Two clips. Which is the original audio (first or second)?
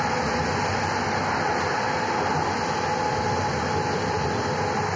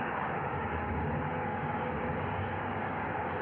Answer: first